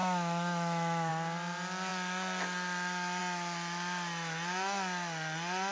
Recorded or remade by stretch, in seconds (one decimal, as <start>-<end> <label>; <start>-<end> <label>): 0.0-1.1 remade; 1.1-5.7 recorded